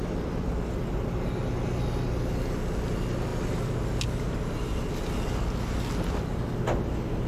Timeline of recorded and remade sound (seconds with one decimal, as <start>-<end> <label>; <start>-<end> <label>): 0.0-7.3 recorded